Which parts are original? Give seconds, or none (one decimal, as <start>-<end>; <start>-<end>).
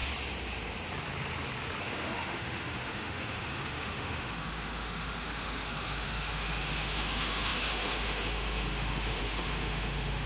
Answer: 0.0-1.8